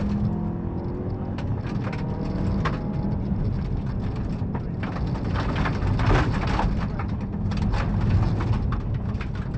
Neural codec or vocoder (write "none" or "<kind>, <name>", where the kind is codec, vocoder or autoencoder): none